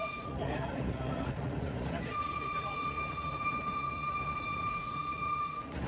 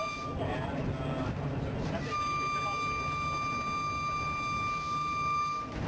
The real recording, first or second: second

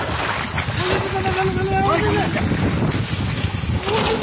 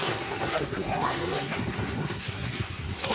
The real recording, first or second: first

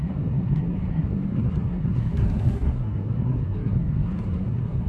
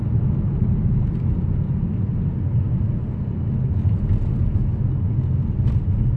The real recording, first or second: second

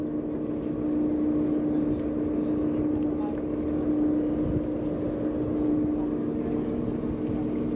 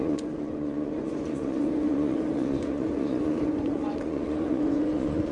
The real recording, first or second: first